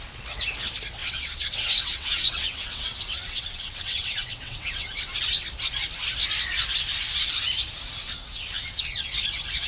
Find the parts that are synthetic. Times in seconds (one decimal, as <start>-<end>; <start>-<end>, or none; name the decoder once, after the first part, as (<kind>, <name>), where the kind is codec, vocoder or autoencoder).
1.0-5.0 (vocoder, WaveNeXt); 8.0-8.8